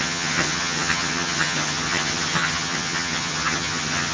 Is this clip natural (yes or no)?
no